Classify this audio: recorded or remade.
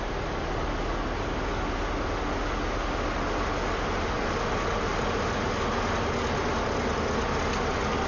recorded